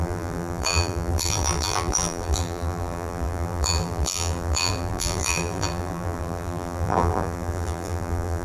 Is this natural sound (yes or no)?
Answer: no